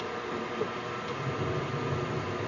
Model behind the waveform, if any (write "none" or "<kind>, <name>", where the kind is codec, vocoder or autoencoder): none